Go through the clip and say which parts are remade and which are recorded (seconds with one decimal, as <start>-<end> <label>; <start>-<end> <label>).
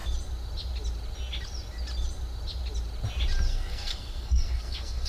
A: 0.0-3.5 recorded; 3.5-5.1 remade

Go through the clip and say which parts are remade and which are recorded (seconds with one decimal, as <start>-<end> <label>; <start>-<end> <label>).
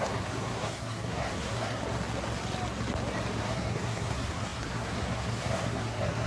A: 0.0-1.8 remade; 1.8-3.4 recorded; 3.4-6.3 remade